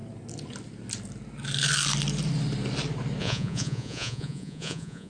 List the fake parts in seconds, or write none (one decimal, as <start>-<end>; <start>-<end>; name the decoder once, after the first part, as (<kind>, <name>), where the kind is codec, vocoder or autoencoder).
3.2-5.1 (vocoder, Vocos)